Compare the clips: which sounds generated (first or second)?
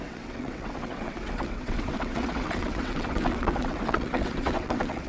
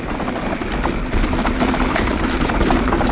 first